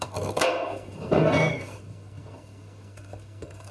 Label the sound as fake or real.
fake